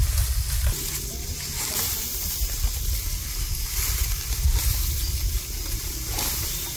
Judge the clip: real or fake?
real